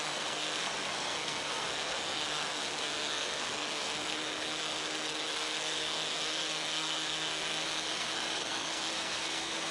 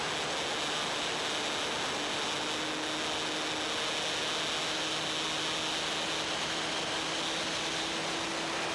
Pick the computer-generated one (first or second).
first